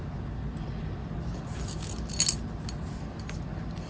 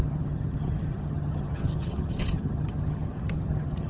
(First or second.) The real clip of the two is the first